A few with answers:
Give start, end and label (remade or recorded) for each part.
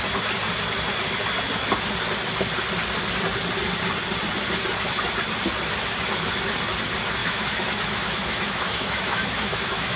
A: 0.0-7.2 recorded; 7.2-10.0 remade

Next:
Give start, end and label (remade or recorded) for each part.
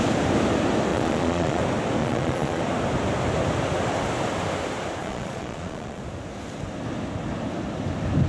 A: 0.0-0.9 recorded; 0.9-1.6 remade; 1.6-2.0 recorded; 2.0-2.6 remade; 2.6-5.0 recorded; 5.0-6.0 remade; 6.0-8.3 recorded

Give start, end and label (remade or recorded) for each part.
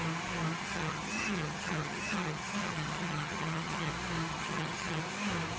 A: 0.0-0.6 recorded; 0.6-3.9 remade; 3.9-4.3 recorded; 4.3-5.0 remade; 5.0-5.6 recorded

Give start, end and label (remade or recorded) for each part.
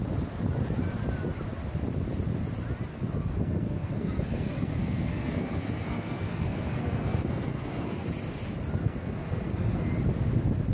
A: 0.0-2.9 recorded; 2.9-8.1 remade; 8.1-8.8 recorded; 8.8-9.9 remade; 9.9-10.7 recorded